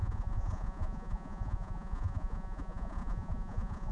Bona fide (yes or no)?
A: no